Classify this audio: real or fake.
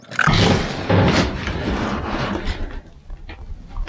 real